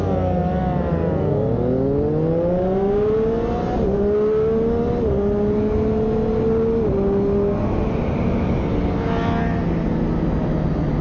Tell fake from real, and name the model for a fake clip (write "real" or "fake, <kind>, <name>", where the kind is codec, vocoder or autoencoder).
real